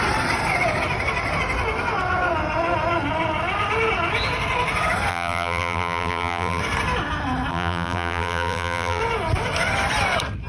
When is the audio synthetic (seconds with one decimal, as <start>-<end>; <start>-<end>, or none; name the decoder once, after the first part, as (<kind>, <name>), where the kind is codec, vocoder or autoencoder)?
5.1-6.6 (vocoder, BigVGAN v2); 7.5-9.0